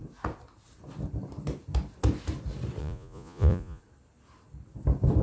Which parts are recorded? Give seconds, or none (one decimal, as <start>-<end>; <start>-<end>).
0.0-2.8; 3.8-5.2